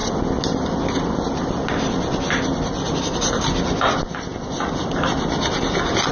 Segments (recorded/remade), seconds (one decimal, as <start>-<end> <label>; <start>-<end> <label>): 0.0-6.1 recorded